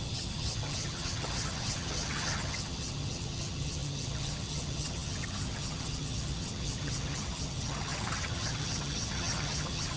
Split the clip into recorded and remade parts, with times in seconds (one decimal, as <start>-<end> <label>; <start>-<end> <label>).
0.0-10.0 remade